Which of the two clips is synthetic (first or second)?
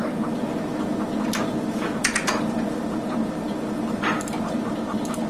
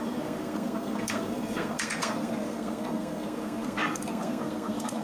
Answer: second